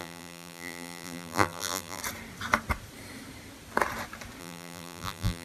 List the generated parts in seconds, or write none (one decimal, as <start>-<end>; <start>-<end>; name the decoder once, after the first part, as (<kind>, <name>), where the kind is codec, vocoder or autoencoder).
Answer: 0.0-2.0 (vocoder, BigVGAN v2); 4.4-5.4

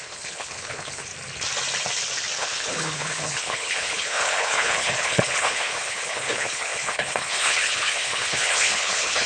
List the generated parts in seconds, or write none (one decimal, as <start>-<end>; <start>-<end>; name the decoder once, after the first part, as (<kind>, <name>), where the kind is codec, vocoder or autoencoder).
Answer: 0.0-1.1 (codec, HILCodec); 2.4-9.3